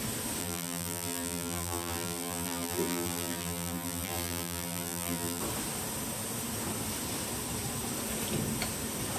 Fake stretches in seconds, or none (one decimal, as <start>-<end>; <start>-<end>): 0.4-5.4